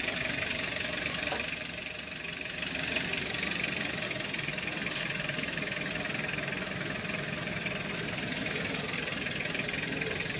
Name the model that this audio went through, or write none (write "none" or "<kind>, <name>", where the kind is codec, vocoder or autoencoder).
vocoder, BigVGAN v2